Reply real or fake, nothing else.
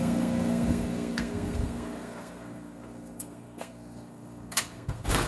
fake